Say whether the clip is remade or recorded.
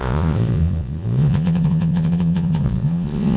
remade